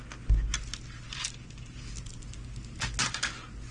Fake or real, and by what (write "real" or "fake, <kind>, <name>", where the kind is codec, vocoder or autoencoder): real